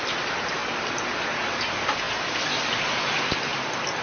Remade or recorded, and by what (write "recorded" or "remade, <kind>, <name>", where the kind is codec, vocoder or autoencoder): recorded